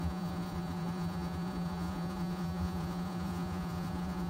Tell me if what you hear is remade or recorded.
remade